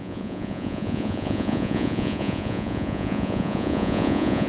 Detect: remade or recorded remade